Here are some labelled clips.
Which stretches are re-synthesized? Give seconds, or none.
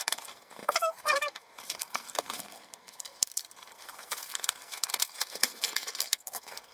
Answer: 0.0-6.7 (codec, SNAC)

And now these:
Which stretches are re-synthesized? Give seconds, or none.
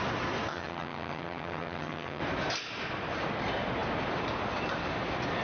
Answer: 0.5-2.2 (vocoder, HiFi-GAN)